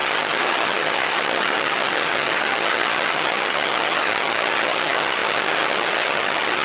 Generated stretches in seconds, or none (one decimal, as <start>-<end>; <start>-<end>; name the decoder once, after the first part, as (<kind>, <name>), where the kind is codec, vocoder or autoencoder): 0.0-6.6 (vocoder, HiFi-GAN)